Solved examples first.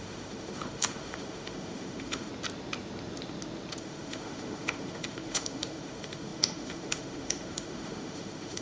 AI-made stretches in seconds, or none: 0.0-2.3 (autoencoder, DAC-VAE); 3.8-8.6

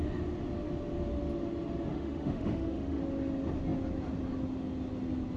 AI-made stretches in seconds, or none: 1.9-3.0 (autoencoder, DAC-VAE)

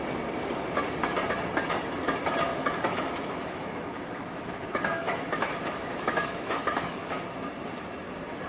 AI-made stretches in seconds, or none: 2.5-7.2 (autoencoder, DAC-VAE)

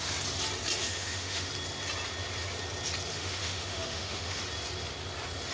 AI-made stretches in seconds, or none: 0.8-1.5 (autoencoder, DAC-VAE); 3.1-4.4

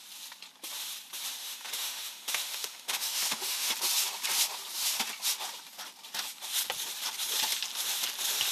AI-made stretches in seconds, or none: 1.4-3.7 (autoencoder, DAC-VAE)

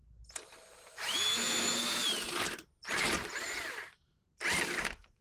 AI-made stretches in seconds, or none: 0.9-2.1 (autoencoder, DAC-VAE); 4.8-5.2

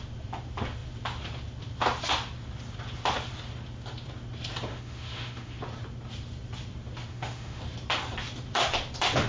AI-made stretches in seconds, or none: 4.7-5.6 (autoencoder, DAC-VAE); 7.1-7.6